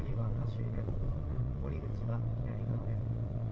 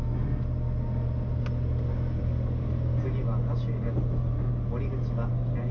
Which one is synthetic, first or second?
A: first